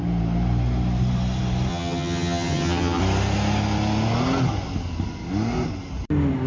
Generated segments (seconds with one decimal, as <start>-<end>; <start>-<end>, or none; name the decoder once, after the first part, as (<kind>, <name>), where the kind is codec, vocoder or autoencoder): 1.7-3.0 (vocoder, HiFi-GAN)